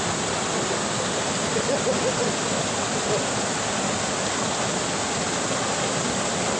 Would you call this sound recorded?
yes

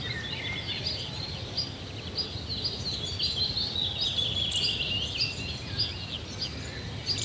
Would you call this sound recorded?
yes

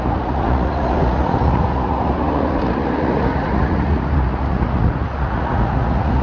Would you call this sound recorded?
no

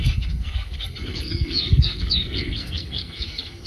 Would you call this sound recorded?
no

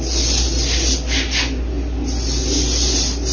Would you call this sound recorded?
yes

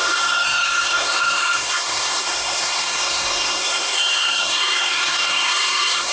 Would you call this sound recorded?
no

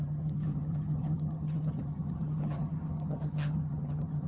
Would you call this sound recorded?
no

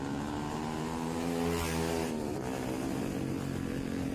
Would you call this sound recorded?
yes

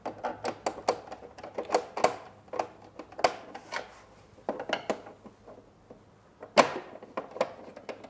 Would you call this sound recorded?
yes